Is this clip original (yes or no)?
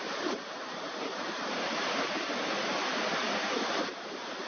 no